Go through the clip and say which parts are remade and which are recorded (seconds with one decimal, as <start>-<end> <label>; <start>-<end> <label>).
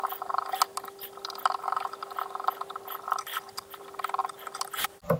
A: 0.0-5.2 recorded